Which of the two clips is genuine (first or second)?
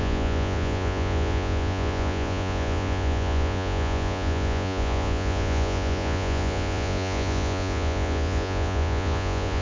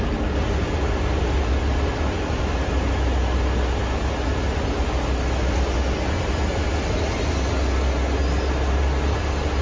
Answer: second